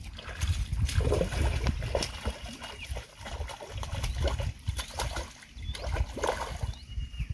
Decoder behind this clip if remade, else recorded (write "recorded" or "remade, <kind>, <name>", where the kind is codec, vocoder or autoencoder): recorded